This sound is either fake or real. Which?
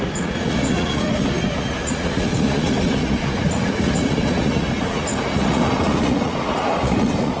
fake